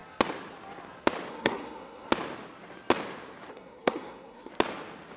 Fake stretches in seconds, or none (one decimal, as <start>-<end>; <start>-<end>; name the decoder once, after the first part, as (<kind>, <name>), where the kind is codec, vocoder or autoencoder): 1.3-2.1 (codec, SNAC); 3.5-4.5